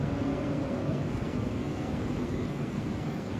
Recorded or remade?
remade